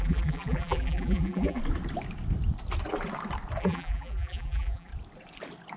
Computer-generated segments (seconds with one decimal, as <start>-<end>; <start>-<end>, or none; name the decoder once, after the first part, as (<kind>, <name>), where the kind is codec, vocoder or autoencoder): 0.0-1.6 (vocoder, BigVGAN v2); 3.6-4.9